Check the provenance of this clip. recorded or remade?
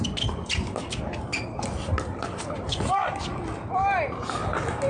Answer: recorded